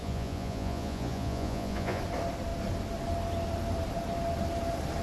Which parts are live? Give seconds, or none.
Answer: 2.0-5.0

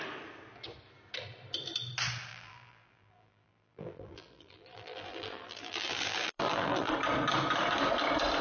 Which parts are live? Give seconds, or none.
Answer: 0.0-2.3; 6.9-8.4

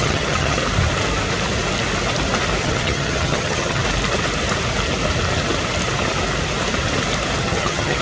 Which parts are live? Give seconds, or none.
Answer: 0.6-2.6; 3.8-7.4

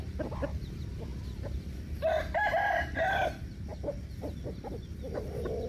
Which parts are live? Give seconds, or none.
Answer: 0.0-5.7

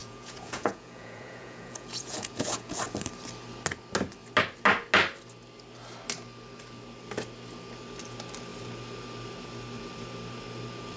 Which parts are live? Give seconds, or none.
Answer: 2.8-11.0

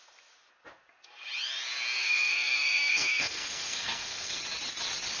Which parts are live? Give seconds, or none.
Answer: 0.0-2.0; 4.4-5.2

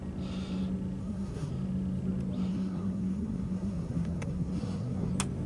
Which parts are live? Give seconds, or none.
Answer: 0.0-1.0; 1.5-2.5; 5.1-5.5

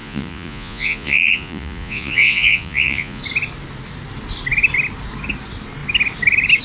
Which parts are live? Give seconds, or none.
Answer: 3.2-6.6